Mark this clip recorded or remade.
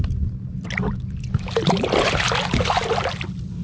recorded